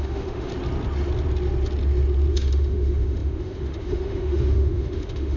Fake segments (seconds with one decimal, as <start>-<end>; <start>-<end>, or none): 0.0-0.5; 2.3-5.4